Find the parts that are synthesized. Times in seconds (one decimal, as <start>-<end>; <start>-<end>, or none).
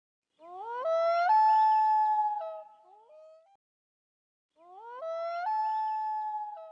none